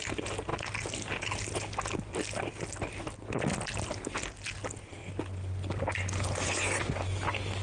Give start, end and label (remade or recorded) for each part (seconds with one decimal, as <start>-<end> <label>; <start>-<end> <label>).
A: 0.0-7.6 recorded